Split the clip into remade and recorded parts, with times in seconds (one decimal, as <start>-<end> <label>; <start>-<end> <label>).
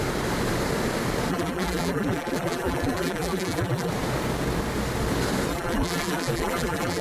0.0-1.3 recorded; 1.3-3.9 remade; 3.9-5.5 recorded; 5.5-7.0 remade